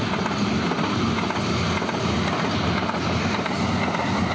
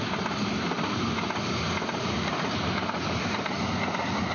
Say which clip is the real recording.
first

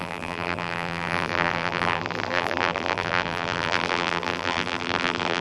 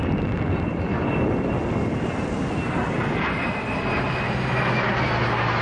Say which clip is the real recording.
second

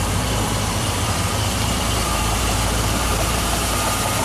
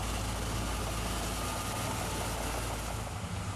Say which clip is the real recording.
second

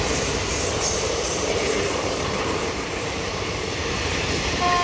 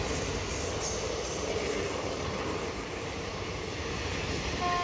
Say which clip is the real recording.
second